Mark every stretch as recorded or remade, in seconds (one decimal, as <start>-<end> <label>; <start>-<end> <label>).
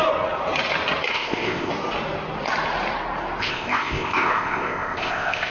0.0-1.1 recorded; 1.1-1.7 remade; 1.7-3.4 recorded; 3.4-5.5 remade